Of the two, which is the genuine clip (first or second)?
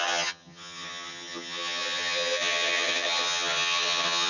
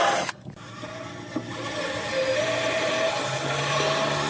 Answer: second